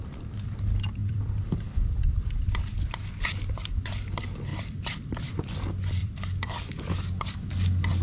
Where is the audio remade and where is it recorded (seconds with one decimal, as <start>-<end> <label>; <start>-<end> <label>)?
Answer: 0.0-1.0 recorded; 1.0-3.1 remade; 3.1-4.5 recorded; 4.5-5.3 remade; 5.3-6.0 recorded; 6.0-6.8 remade; 6.8-8.0 recorded